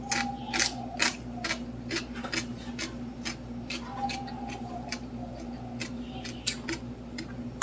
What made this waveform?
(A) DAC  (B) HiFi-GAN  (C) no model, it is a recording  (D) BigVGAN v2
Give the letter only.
C